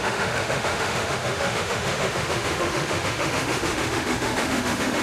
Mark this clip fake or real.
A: fake